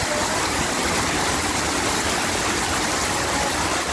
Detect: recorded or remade recorded